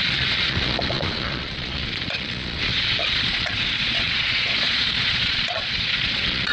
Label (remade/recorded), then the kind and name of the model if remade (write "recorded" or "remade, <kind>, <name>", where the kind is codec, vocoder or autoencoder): remade, vocoder, Vocos